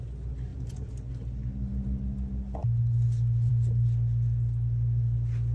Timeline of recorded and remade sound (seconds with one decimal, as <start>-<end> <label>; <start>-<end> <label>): 0.0-0.5 recorded; 0.5-1.1 remade; 1.1-5.5 recorded